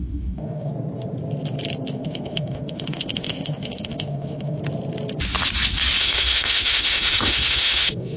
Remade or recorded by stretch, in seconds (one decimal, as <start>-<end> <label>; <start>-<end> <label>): 0.0-0.7 remade; 0.7-1.9 recorded; 1.9-4.6 remade; 4.6-6.0 recorded; 6.0-8.2 remade